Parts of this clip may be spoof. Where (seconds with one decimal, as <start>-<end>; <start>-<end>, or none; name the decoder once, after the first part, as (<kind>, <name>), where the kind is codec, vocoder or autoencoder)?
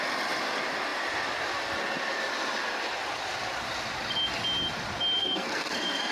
5.2-6.1 (codec, SNAC)